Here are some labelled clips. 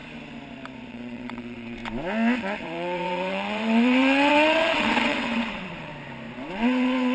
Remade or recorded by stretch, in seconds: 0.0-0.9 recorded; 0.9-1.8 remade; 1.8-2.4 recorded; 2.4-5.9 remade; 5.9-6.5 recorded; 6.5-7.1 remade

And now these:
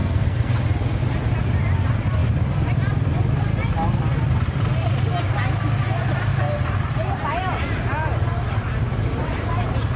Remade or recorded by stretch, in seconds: 0.0-0.5 remade; 0.5-10.0 recorded

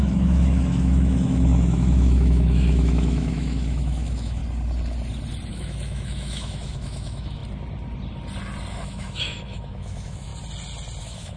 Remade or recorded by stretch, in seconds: 0.0-4.4 remade; 4.4-5.5 recorded; 5.5-7.4 remade; 7.4-8.7 recorded; 8.7-10.3 remade; 10.3-11.0 recorded; 11.0-11.4 remade

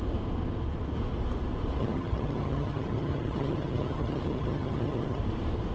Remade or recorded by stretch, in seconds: 0.0-1.8 recorded; 1.8-5.2 remade; 5.2-5.7 recorded

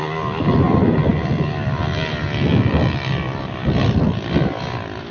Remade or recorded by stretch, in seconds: 0.0-5.1 recorded

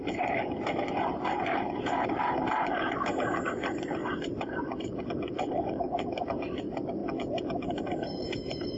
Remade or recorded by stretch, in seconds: 0.0-8.8 recorded

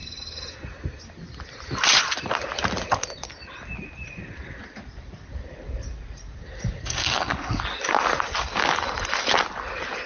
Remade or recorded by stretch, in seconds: 0.0-6.8 recorded; 6.8-7.6 remade; 7.6-10.1 recorded

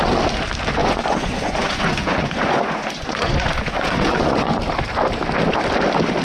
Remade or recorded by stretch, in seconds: 0.0-0.8 recorded; 0.8-4.5 remade; 4.5-6.2 recorded